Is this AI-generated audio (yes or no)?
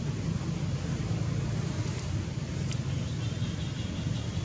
no